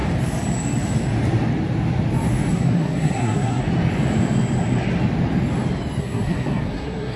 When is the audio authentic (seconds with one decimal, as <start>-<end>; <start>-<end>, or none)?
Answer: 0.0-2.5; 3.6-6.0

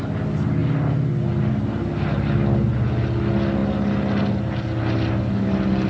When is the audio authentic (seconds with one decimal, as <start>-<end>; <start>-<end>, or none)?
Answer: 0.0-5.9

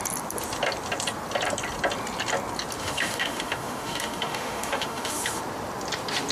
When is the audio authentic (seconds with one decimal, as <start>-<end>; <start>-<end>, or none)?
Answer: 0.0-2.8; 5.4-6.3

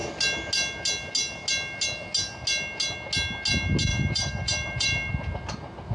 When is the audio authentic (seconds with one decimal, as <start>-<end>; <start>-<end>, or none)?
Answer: 0.0-3.9; 5.1-5.9

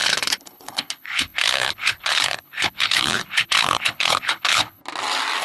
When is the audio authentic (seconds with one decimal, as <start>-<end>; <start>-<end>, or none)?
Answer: 4.8-5.4